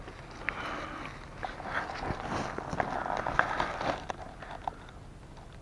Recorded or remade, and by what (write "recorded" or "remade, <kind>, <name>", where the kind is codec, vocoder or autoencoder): recorded